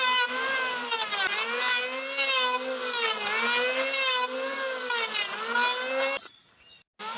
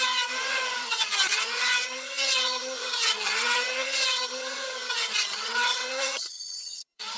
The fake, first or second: second